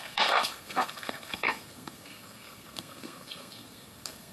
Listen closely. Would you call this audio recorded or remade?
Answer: remade